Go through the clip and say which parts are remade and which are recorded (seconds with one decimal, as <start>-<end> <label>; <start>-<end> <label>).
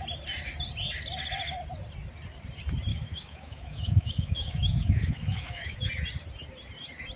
0.0-2.9 recorded; 2.9-5.9 remade; 5.9-7.2 recorded